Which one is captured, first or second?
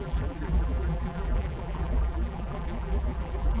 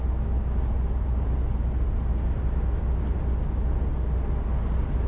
second